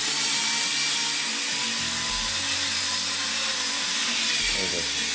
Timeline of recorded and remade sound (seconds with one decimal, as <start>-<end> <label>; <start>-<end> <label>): 0.0-5.1 recorded